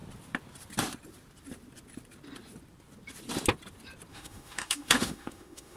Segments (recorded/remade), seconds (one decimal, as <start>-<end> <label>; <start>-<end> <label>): 0.0-4.1 recorded; 4.1-5.8 remade